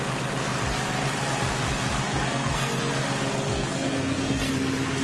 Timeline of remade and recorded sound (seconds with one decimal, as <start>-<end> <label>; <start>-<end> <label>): 0.0-2.0 recorded; 2.0-2.9 remade; 2.9-3.5 recorded; 3.5-4.5 remade; 4.5-5.0 recorded